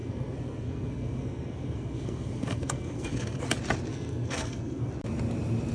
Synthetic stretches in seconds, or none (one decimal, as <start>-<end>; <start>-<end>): 0.0-3.4; 3.9-4.9